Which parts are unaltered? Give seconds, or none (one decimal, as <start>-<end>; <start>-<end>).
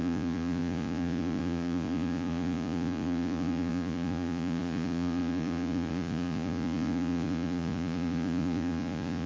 none